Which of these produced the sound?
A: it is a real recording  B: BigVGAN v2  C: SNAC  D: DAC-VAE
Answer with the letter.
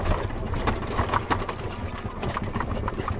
A